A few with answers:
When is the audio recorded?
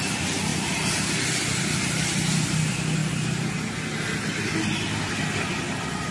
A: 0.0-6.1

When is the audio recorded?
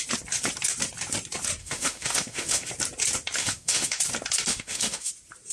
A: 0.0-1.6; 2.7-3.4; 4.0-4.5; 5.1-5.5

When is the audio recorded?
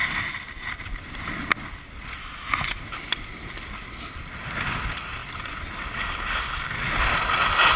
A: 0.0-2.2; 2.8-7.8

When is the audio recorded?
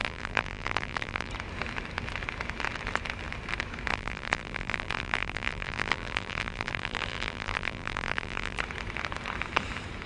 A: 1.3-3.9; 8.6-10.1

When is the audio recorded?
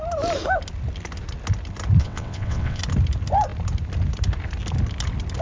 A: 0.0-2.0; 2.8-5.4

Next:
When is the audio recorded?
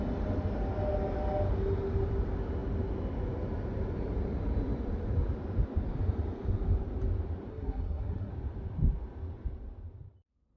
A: 0.0-7.5; 8.3-10.6